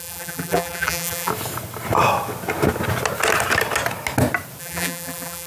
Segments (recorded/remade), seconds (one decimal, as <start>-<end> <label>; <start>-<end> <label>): 0.0-1.3 remade; 1.3-4.6 recorded; 4.6-5.5 remade